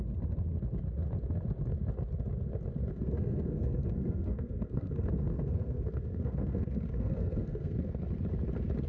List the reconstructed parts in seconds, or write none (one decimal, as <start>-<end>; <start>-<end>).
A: 2.9-8.0